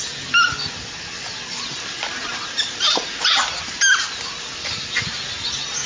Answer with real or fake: real